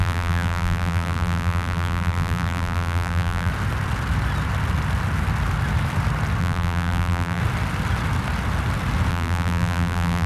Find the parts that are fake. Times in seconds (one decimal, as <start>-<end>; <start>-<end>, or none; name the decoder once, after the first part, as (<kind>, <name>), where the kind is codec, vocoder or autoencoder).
0.0-3.5 (vocoder, BigVGAN v2); 6.4-7.4; 9.1-10.3